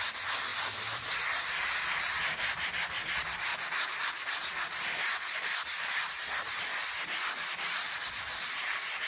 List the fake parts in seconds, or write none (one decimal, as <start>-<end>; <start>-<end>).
0.5-1.8; 3.5-8.1